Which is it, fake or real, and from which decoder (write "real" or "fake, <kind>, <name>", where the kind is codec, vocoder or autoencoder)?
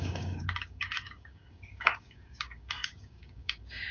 fake, codec, DAC